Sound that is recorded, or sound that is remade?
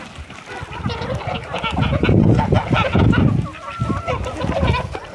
recorded